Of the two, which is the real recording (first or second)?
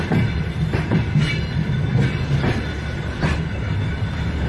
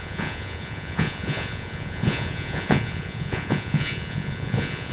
first